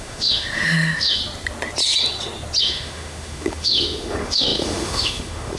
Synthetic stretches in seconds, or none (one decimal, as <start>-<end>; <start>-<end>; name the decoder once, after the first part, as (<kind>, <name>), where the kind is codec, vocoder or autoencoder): 0.0-1.2 (autoencoder, DAC-VAE); 2.6-5.6